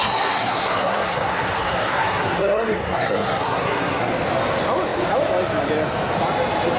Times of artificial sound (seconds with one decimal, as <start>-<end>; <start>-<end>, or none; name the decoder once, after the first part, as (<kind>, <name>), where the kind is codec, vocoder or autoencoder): 0.0-4.1 (codec, SNAC)